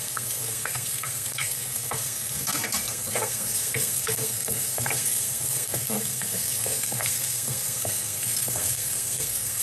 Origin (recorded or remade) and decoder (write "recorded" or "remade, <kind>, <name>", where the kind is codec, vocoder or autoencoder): remade, codec, SNAC